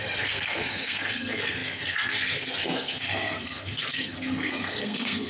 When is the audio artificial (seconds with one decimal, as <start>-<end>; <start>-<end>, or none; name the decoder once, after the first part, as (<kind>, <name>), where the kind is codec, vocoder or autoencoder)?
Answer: 0.0-5.3 (codec, SNAC)